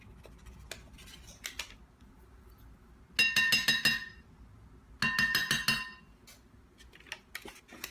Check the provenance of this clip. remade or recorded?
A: recorded